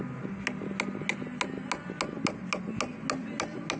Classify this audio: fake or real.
real